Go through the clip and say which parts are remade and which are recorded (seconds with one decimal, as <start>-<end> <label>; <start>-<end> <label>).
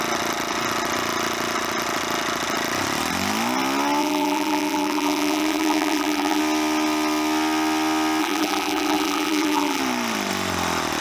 0.0-4.0 recorded; 4.0-6.4 remade; 6.4-8.2 recorded; 8.2-9.8 remade; 9.8-11.0 recorded